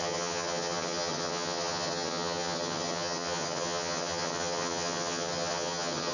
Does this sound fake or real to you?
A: fake